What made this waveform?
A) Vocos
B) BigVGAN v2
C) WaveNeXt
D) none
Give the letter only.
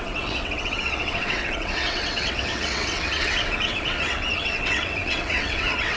C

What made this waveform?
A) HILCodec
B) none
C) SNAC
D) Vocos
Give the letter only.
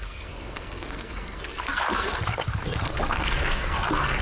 C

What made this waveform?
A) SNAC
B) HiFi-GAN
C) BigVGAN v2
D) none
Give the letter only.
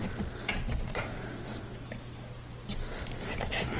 D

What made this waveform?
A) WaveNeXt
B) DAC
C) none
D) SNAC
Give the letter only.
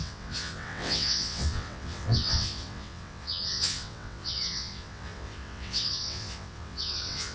A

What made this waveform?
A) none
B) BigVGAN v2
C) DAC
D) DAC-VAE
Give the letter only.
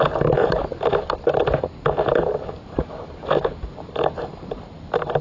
A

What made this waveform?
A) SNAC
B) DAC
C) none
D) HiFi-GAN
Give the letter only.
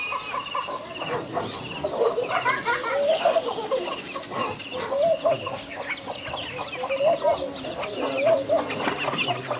C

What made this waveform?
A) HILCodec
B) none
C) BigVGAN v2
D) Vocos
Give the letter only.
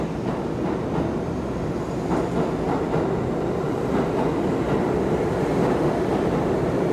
B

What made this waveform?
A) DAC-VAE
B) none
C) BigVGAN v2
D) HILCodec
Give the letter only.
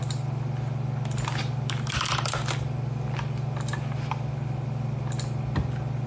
B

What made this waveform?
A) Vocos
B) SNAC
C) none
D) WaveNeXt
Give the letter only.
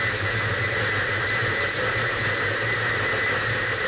C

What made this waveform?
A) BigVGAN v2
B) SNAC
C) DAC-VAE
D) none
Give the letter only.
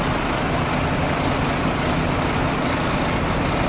D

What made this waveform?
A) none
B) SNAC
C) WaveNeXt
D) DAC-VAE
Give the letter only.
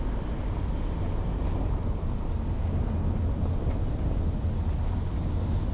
A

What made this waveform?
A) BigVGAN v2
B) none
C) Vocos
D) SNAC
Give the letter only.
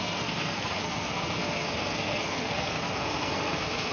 D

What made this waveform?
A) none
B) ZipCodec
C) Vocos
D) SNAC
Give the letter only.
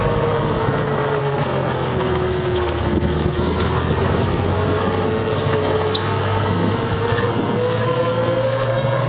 D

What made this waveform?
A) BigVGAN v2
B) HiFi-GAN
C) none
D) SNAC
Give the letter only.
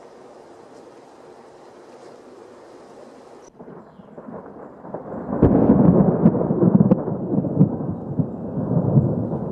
C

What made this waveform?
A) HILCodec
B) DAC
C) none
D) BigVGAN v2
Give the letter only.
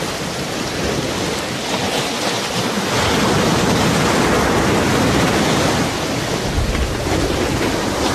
C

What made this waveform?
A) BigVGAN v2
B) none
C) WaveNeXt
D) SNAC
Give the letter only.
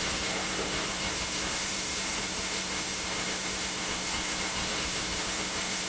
D